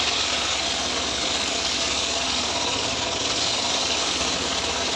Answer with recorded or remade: remade